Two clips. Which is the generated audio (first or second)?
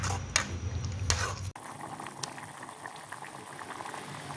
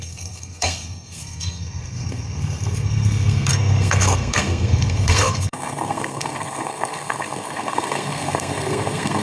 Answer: second